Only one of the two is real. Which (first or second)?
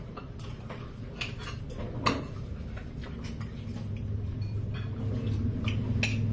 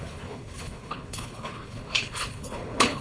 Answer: first